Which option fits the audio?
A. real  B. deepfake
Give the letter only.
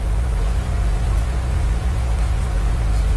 B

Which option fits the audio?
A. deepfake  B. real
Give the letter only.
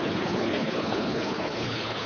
A